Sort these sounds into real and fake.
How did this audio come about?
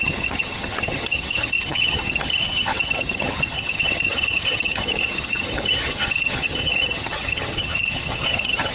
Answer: fake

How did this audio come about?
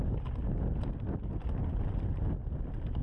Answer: real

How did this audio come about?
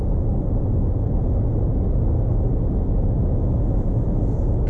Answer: real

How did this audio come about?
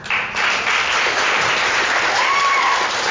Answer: fake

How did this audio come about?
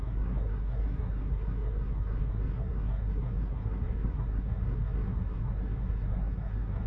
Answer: fake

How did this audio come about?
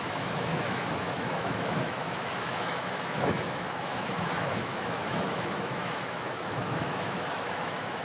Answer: fake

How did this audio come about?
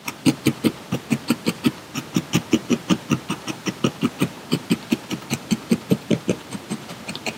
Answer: fake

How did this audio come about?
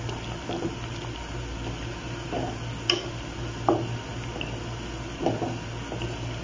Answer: real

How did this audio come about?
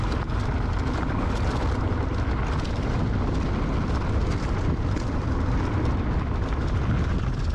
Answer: real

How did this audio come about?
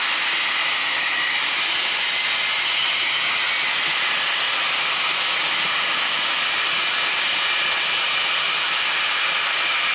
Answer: real